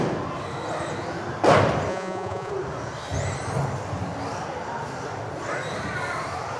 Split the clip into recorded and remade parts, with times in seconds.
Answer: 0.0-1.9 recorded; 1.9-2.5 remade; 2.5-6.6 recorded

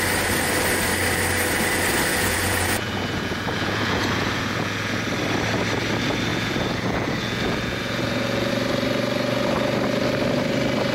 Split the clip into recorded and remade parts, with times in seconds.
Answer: 0.0-2.1 recorded; 2.1-5.0 remade; 5.0-6.3 recorded; 6.3-8.5 remade; 8.5-10.9 recorded